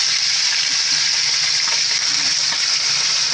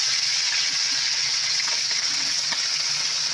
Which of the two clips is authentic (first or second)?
first